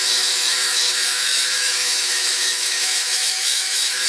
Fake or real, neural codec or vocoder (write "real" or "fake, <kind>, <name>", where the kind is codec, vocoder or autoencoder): fake, autoencoder, DAC-VAE